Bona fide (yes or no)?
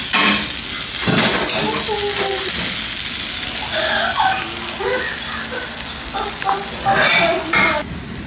yes